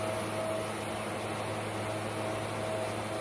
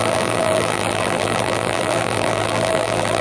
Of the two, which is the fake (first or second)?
second